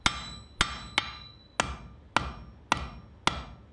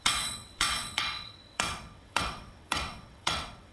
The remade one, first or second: second